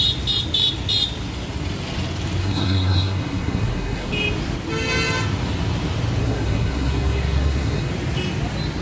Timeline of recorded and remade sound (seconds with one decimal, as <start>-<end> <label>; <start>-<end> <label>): 0.0-2.4 recorded; 2.4-4.1 remade; 4.1-6.2 recorded; 6.2-7.9 remade; 7.9-8.8 recorded